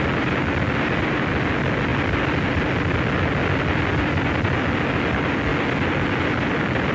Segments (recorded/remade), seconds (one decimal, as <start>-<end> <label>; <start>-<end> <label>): 0.0-6.9 recorded